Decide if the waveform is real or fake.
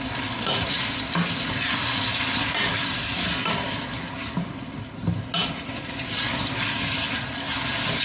real